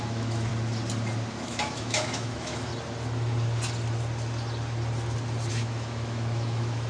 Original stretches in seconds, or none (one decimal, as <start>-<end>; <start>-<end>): 0.5-1.3; 2.7-5.5